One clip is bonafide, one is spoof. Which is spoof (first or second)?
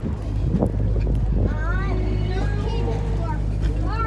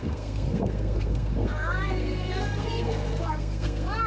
second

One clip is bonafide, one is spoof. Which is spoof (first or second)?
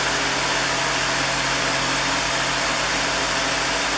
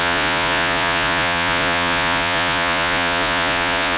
second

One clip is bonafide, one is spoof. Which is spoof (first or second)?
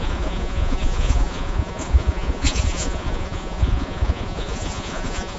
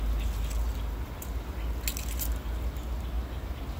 first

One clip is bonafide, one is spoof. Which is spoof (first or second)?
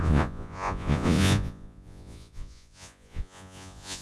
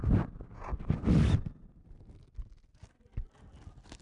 first